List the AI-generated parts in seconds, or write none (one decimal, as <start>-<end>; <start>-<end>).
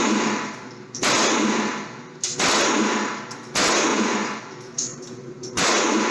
3.9-4.4; 4.9-5.6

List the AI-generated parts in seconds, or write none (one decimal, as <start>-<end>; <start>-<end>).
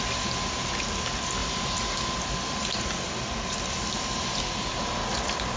1.4-4.8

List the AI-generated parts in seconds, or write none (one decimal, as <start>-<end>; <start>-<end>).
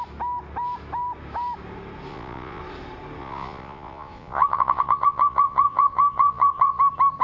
2.1-2.6; 3.2-6.8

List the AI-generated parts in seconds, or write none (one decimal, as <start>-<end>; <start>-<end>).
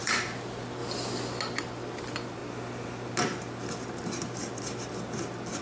none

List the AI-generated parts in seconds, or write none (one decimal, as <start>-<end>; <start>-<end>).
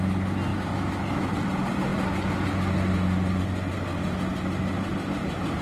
0.5-1.3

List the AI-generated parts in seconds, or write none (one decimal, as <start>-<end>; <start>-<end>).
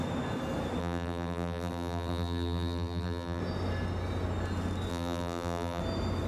0.8-3.4; 4.9-5.8